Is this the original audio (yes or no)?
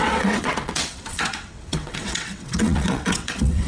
no